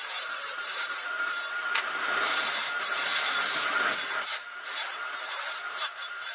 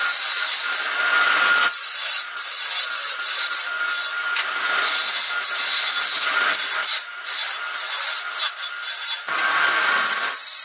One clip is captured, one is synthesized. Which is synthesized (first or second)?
first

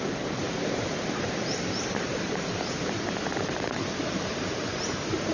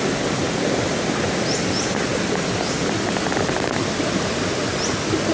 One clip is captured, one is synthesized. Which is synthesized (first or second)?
first